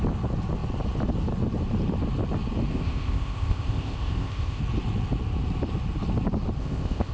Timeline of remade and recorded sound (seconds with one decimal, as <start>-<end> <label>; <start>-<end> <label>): 0.0-2.7 recorded; 2.7-4.6 remade; 4.6-6.6 recorded; 6.6-7.1 remade